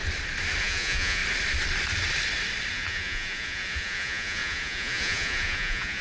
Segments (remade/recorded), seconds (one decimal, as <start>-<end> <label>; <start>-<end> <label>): 0.0-0.6 recorded; 0.6-1.2 remade; 1.2-2.7 recorded; 2.7-6.0 remade